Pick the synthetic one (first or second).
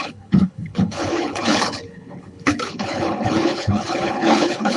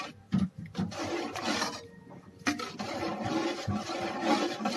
first